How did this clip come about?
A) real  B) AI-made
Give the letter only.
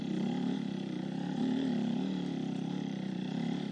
B